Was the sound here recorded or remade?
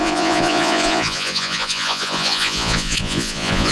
remade